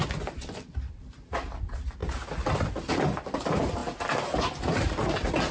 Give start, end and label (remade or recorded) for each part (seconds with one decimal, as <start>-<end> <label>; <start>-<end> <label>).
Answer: 0.0-5.5 recorded